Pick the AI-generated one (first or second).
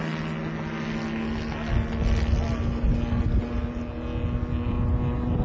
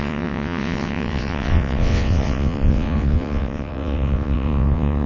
second